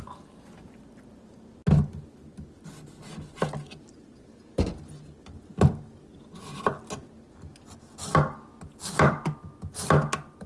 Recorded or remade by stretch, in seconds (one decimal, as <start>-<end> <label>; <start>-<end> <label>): 0.0-10.5 recorded